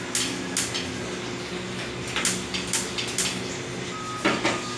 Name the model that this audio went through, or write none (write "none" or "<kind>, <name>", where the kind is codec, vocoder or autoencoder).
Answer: none